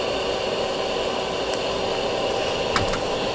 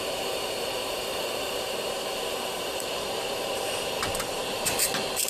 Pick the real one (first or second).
first